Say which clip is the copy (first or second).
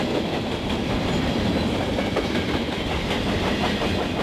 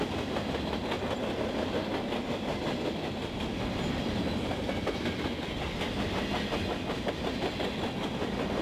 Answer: first